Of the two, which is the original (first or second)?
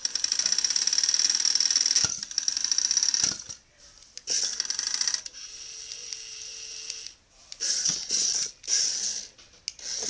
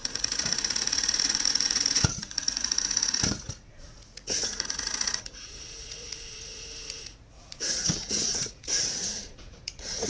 first